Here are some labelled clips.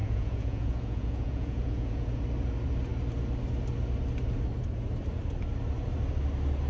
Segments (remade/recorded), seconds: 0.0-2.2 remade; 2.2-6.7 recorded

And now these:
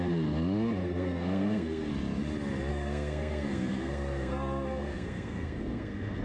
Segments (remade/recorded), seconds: 0.0-0.8 recorded; 0.8-1.9 remade; 1.9-2.7 recorded; 2.7-6.2 remade